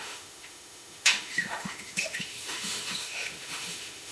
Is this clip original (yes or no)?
no